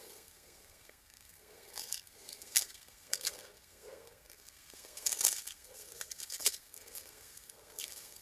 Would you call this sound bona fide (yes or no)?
no